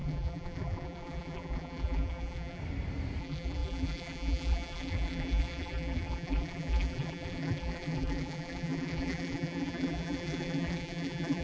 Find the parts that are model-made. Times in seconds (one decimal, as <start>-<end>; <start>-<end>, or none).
0.0-2.6; 3.2-11.4